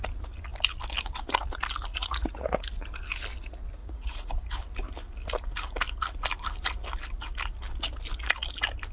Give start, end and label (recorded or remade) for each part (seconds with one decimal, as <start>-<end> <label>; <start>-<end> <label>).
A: 0.0-1.9 recorded; 1.9-2.6 remade; 2.6-3.8 recorded; 3.8-4.3 remade; 4.3-8.9 recorded